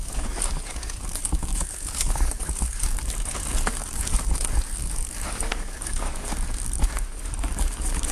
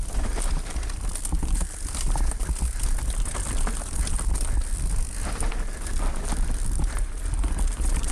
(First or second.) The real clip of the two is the second